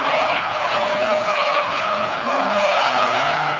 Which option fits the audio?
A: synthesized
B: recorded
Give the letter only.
A